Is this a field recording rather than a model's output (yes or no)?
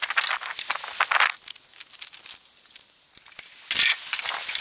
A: yes